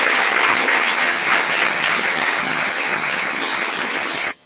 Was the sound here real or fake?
fake